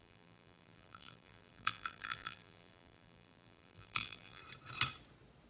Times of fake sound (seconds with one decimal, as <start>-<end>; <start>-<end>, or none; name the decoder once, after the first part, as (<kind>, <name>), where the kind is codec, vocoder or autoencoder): 0.0-4.4 (vocoder, BigVGAN v2)